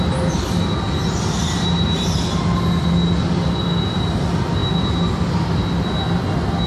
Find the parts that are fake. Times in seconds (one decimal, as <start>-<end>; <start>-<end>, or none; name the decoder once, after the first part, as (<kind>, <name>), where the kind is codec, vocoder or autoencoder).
none